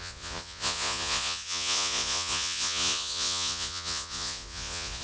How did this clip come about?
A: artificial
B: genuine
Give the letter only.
A